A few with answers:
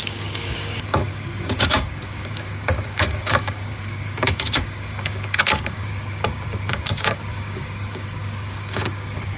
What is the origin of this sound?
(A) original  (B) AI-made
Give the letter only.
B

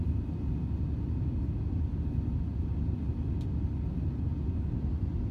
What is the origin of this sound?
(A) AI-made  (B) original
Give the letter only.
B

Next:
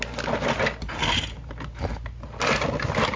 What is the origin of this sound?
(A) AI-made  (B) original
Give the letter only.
B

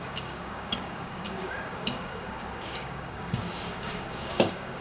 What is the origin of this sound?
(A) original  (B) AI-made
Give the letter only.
B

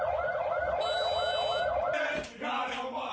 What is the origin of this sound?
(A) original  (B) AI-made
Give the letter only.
A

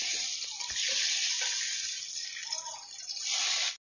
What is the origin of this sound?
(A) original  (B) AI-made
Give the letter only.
A